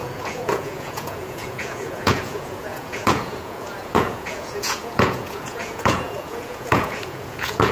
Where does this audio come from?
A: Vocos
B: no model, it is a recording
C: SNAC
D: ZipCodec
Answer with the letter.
A